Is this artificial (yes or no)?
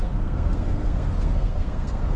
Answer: yes